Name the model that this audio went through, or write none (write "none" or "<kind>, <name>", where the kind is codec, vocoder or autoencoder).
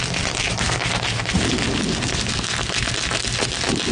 none